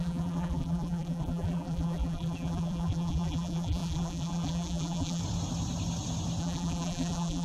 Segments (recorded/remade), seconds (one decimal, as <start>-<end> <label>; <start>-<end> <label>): 0.0-5.2 remade; 5.2-6.4 recorded; 6.4-7.4 remade